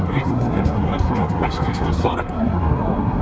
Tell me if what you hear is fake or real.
fake